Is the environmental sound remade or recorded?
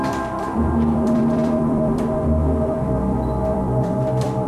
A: remade